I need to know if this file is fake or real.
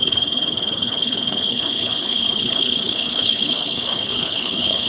fake